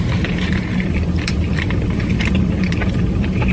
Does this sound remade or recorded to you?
remade